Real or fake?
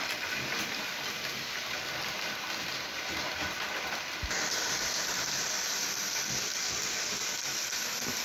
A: real